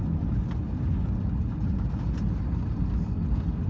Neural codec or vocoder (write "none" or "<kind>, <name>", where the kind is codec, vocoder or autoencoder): none